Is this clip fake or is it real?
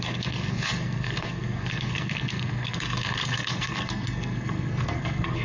fake